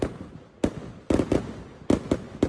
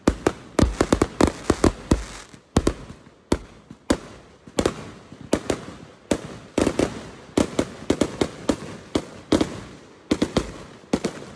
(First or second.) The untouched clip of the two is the second